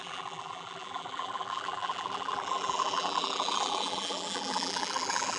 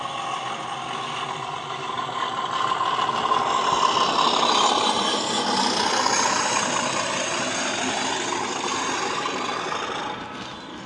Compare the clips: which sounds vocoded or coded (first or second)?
first